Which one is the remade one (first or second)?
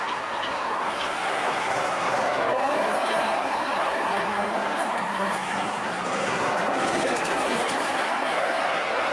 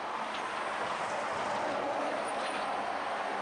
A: first